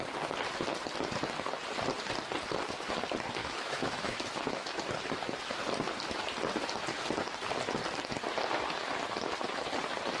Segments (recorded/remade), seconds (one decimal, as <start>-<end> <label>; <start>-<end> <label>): 0.0-3.4 recorded; 3.4-4.8 remade; 4.8-10.2 recorded